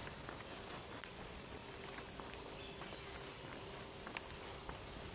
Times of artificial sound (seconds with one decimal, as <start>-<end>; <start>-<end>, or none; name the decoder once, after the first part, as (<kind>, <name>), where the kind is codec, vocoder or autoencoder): 1.0-1.6 (vocoder, Vocos)